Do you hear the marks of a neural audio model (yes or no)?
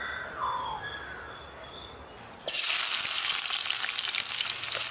no